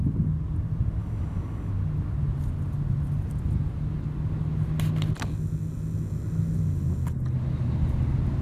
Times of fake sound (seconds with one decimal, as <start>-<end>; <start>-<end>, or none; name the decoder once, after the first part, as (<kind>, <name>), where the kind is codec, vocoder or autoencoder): 1.0-1.7 (codec, DAC)